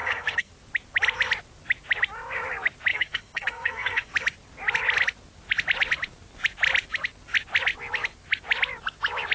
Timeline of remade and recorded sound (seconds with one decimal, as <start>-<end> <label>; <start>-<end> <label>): 0.0-0.5 remade; 0.5-2.9 recorded; 2.9-4.1 remade; 4.1-9.3 recorded